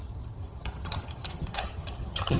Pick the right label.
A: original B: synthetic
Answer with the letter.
B